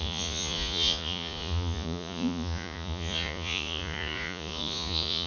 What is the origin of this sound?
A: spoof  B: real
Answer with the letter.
A